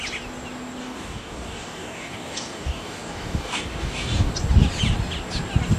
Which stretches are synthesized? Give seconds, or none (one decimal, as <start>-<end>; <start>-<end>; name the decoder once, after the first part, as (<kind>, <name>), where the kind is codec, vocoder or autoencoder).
0.8-4.3 (codec, DAC)